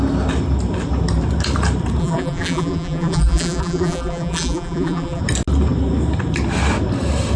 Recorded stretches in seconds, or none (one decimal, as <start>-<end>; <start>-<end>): 0.0-2.0; 5.2-7.4